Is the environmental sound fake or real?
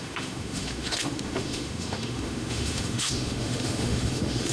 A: fake